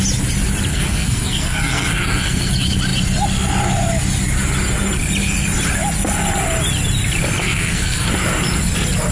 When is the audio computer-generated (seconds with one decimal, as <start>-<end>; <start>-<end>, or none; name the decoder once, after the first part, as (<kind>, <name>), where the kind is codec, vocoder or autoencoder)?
0.7-2.5 (codec, SNAC); 7.4-8.1